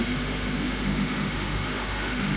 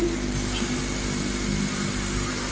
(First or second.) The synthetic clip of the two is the first